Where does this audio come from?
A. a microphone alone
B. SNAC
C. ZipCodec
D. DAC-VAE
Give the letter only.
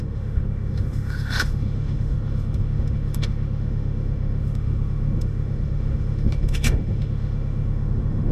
D